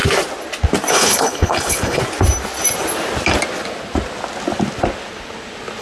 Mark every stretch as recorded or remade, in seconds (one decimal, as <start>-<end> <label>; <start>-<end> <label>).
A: 0.0-0.9 recorded; 0.9-2.0 remade; 2.0-5.8 recorded